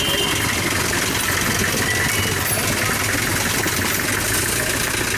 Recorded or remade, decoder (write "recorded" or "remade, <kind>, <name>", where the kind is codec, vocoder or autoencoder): recorded